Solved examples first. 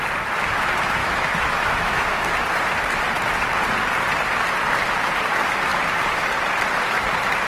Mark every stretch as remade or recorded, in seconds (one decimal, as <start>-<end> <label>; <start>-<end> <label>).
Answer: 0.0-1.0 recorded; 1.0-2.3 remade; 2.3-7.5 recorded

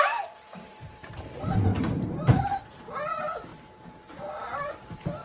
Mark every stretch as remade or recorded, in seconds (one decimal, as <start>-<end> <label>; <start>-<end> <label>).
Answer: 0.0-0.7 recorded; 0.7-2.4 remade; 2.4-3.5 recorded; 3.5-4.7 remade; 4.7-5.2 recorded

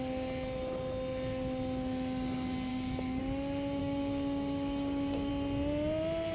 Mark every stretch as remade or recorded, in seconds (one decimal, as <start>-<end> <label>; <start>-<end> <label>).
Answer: 0.0-2.7 recorded; 2.7-3.2 remade; 3.2-3.8 recorded; 3.8-5.3 remade; 5.3-6.3 recorded

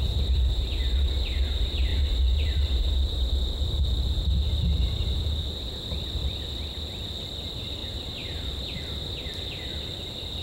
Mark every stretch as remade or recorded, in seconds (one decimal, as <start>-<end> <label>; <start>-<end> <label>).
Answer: 0.0-1.9 recorded; 1.9-2.9 remade; 2.9-7.8 recorded; 7.8-8.8 remade; 8.8-10.4 recorded

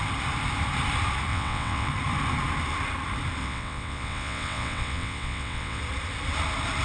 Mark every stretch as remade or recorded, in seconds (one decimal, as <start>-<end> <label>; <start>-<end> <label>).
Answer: 0.0-1.3 recorded; 1.3-1.9 remade; 1.9-3.4 recorded; 3.4-5.8 remade; 5.8-6.8 recorded

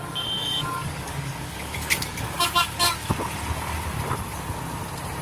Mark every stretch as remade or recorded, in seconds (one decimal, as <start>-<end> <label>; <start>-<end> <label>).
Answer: 0.0-3.1 remade; 3.1-5.2 recorded

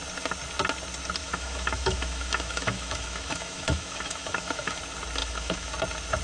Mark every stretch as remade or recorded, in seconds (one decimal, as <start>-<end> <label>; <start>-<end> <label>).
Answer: 0.0-1.2 recorded; 1.2-4.8 remade; 4.8-5.2 recorded; 5.2-5.7 remade; 5.7-6.2 recorded